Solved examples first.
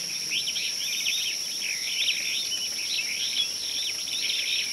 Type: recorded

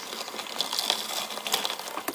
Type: recorded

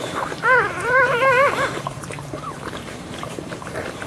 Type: remade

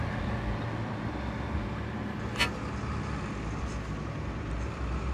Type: recorded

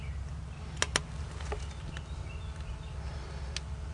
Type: recorded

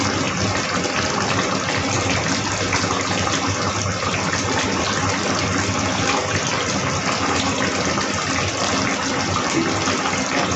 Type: recorded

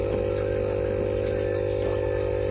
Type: recorded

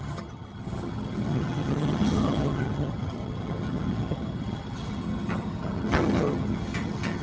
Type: remade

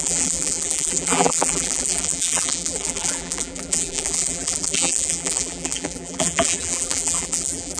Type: remade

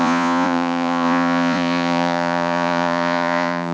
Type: remade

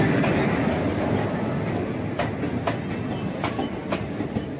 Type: recorded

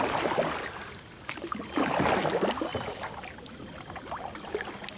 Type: recorded